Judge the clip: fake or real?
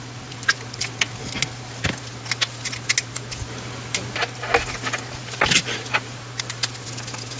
real